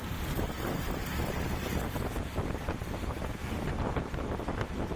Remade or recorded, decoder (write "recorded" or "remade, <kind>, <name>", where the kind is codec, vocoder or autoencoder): recorded